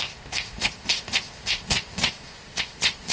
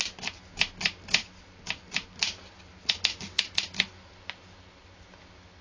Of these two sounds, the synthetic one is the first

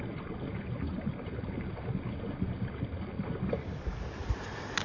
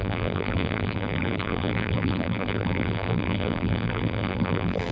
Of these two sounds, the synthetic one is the second